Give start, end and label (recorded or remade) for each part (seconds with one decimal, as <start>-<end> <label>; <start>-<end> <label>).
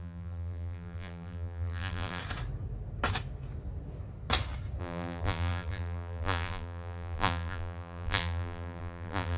0.0-2.2 remade; 2.2-4.8 recorded; 4.8-9.4 remade